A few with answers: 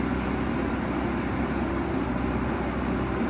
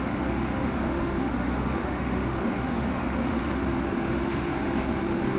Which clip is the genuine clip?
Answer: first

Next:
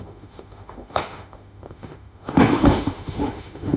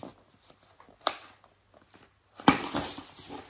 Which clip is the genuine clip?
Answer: second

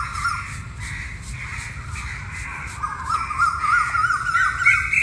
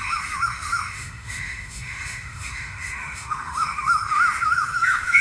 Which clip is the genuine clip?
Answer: first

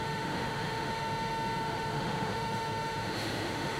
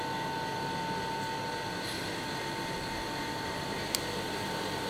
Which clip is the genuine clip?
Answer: second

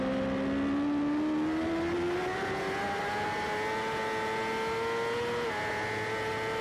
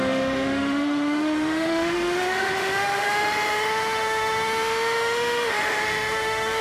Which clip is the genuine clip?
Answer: first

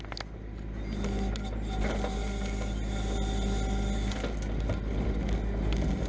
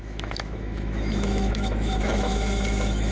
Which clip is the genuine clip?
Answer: first